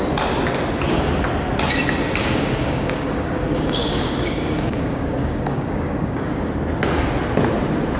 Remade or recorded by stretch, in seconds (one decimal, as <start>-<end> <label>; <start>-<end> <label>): 0.0-2.2 recorded; 2.2-6.5 remade; 6.5-8.0 recorded